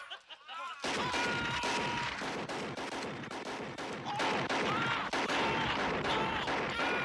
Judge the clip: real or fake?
real